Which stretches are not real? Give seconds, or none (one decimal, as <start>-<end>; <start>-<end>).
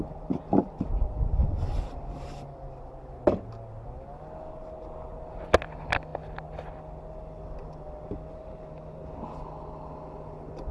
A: none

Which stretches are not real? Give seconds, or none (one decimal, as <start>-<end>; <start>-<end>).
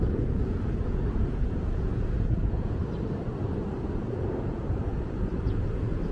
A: 0.0-2.8; 3.8-6.1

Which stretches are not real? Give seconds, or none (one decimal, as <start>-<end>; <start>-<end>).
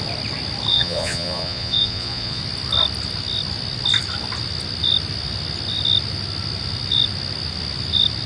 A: 0.7-2.4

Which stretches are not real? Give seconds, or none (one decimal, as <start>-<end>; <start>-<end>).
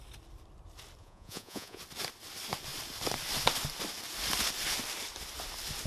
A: 1.0-1.8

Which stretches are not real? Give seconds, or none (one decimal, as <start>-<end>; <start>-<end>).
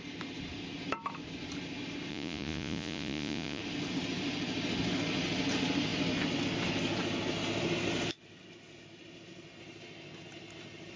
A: 2.1-3.6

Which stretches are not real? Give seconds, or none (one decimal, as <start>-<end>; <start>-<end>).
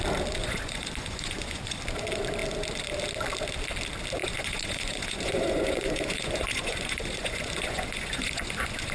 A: 0.4-1.8; 4.2-8.9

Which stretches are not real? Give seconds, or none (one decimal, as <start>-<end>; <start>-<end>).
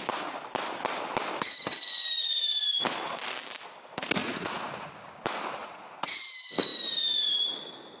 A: 4.2-4.9; 5.6-6.1